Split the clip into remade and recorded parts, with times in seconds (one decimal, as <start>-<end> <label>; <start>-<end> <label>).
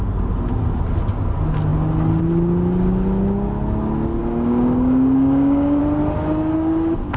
0.0-4.2 recorded; 4.2-5.8 remade; 5.8-7.2 recorded